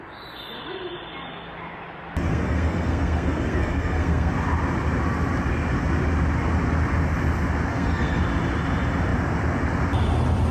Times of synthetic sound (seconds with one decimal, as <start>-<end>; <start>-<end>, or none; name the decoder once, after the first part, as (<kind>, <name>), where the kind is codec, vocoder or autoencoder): 2.3-4.3 (codec, SNAC); 7.7-8.2